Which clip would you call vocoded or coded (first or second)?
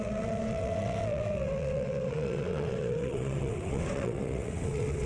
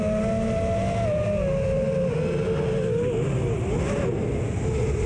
first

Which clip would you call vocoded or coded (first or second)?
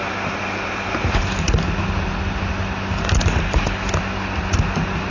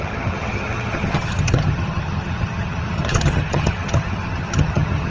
second